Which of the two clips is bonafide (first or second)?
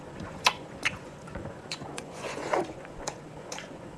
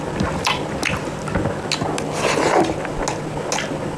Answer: second